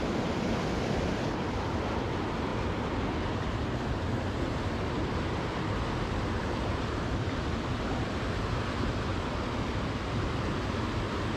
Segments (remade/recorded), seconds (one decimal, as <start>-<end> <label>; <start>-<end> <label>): 0.0-11.4 recorded